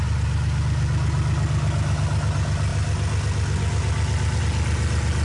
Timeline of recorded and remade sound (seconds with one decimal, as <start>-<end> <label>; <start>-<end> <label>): 0.0-5.2 recorded